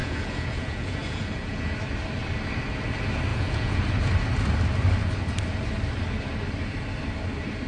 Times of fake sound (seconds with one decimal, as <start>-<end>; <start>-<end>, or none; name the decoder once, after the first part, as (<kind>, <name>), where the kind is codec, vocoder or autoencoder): 0.0-1.7 (vocoder, Vocos); 3.3-3.8